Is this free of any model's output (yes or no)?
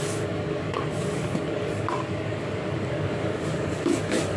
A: no